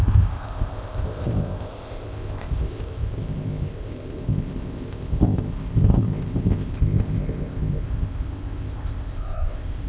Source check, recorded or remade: remade